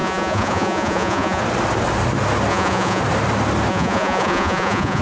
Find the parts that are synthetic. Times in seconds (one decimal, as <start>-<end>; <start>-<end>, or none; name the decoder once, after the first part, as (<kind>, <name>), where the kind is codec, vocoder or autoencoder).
0.0-1.4 (vocoder, Vocos); 2.5-3.0; 3.7-5.0